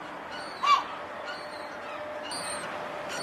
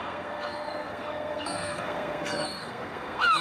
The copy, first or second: second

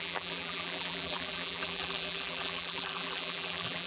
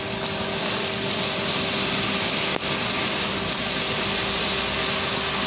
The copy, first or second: first